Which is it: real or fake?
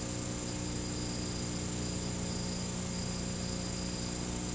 real